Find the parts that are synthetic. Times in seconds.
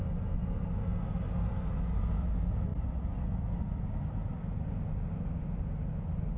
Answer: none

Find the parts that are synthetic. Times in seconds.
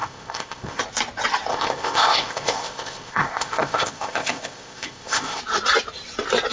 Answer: 0.0-0.8 (codec, ZipCodec); 1.5-5.4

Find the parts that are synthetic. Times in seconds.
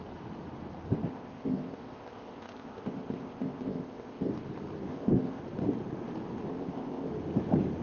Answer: 1.1-4.3 (codec, ZipCodec); 4.9-5.4; 6.5-7.1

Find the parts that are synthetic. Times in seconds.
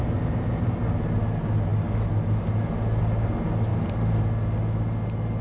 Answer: none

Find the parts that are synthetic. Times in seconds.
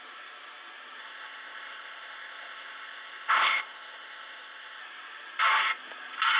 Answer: 1.0-4.8 (codec, ZipCodec)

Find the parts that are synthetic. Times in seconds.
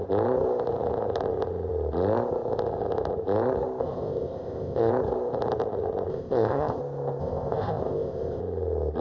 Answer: 3.8-4.9 (codec, ZipCodec); 6.1-6.8; 7.2-8.4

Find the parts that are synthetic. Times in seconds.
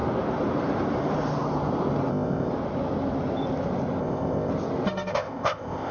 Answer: 2.1-2.5 (codec, ZipCodec); 4.0-4.5; 5.1-5.9